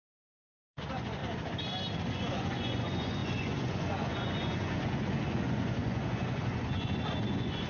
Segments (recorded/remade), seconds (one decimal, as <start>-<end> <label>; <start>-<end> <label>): 0.0-1.2 remade; 1.2-2.1 recorded; 2.1-7.7 remade